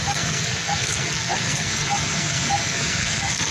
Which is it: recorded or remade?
remade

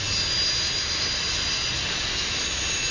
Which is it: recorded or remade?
recorded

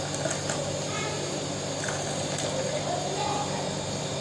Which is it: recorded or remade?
recorded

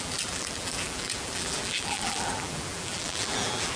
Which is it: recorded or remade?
remade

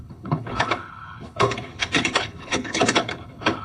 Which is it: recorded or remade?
remade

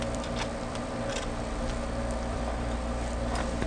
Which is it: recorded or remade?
remade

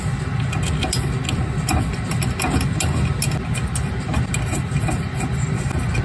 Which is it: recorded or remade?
recorded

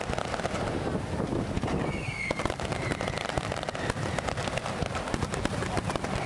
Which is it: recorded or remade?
recorded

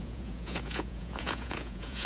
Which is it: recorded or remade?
remade